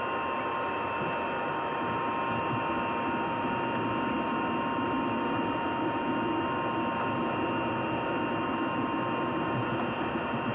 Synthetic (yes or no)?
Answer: no